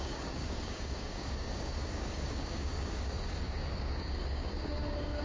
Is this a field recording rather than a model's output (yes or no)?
no